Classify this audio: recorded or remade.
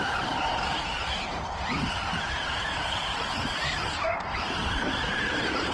remade